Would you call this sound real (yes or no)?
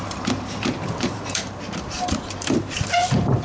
no